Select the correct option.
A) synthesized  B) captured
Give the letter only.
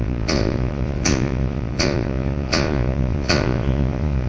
A